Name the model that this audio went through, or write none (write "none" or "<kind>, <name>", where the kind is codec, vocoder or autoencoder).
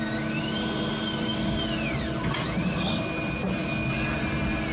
none